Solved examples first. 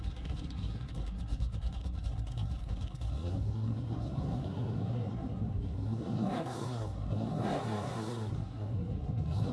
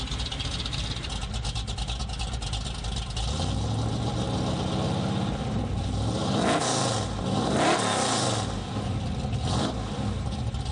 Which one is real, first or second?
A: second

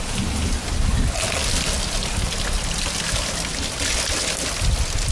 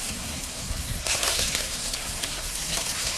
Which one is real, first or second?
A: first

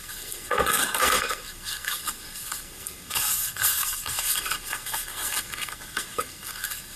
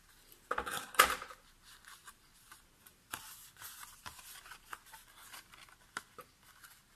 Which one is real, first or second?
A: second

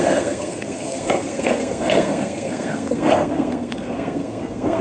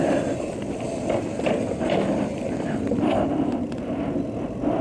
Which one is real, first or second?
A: second